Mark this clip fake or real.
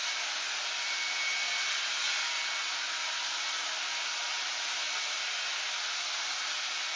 real